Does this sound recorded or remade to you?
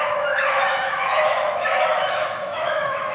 remade